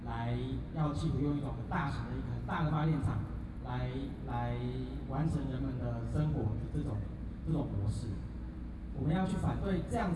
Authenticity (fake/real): real